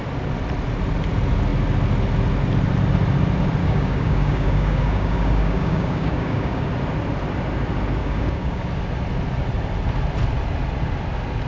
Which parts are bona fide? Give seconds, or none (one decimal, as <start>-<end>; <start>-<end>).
0.0-3.6; 6.7-8.0; 8.6-11.5